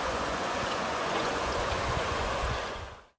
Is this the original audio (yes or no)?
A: no